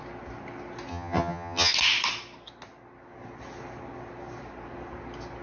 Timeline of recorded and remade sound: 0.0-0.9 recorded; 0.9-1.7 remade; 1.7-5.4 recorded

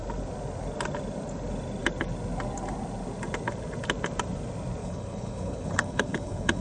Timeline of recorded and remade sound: 0.0-4.8 recorded; 4.8-6.6 remade

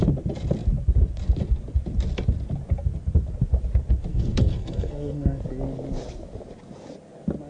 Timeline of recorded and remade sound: 0.0-4.1 recorded; 4.1-5.4 remade; 5.4-7.5 recorded

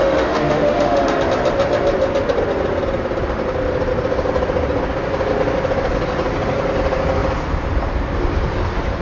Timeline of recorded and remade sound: 0.0-1.2 remade; 1.2-9.0 recorded